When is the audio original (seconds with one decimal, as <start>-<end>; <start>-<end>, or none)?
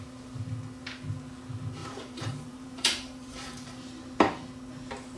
0.0-1.8; 3.9-5.2